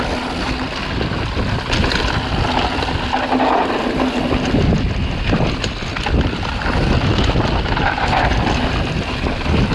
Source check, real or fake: real